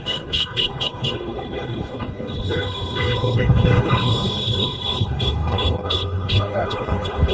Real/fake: fake